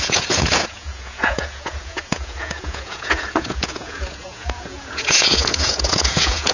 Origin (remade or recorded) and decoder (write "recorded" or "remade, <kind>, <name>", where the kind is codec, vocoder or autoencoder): remade, vocoder, Vocos